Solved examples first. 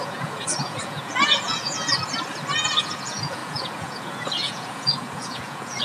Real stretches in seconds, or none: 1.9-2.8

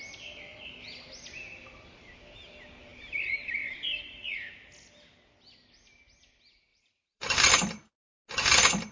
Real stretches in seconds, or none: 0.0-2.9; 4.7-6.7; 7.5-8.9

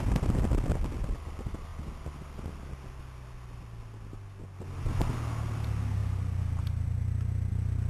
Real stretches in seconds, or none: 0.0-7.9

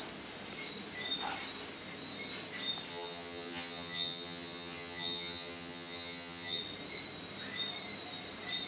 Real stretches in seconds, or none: 0.0-2.9; 6.6-8.7